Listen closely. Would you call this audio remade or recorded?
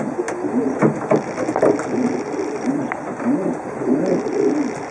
recorded